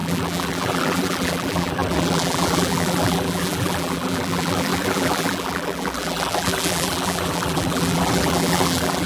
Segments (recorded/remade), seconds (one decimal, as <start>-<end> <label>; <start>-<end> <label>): 0.0-9.1 remade